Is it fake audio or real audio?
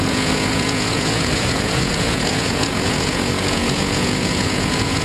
fake